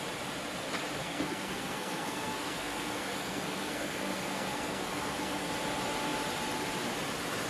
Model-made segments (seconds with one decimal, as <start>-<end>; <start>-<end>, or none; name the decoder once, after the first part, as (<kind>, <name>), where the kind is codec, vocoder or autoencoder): 1.0-5.5 (codec, SNAC)